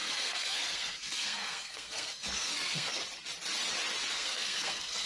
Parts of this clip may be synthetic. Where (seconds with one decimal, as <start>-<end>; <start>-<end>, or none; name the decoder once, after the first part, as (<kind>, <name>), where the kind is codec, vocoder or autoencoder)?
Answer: 0.0-3.0 (codec, SNAC); 4.1-5.1

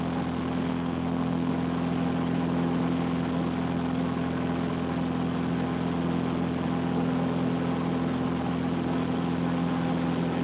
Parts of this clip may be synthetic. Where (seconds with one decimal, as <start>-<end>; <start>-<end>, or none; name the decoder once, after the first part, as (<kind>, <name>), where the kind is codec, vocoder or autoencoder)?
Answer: 0.7-1.5 (codec, SNAC)

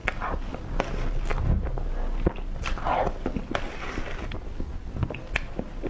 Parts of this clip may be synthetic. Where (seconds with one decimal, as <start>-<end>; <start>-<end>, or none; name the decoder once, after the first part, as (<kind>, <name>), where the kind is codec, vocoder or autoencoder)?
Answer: none

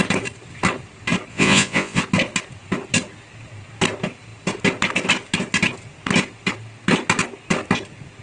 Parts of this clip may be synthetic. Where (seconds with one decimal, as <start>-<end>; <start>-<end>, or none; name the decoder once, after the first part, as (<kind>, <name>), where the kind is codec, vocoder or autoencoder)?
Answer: 1.3-2.0 (vocoder, Vocos)